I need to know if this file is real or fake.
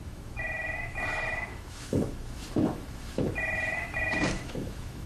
fake